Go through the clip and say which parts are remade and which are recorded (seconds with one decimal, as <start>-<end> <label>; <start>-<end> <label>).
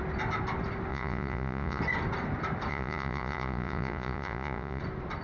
0.0-0.9 recorded; 0.9-1.8 remade; 1.8-2.7 recorded; 2.7-4.8 remade; 4.8-5.2 recorded